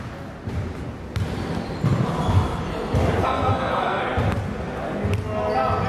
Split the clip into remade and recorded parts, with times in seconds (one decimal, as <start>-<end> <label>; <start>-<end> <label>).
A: 0.0-3.2 recorded; 3.2-4.0 remade; 4.0-5.9 recorded